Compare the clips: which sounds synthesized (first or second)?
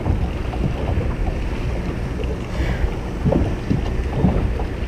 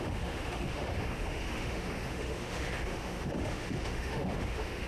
second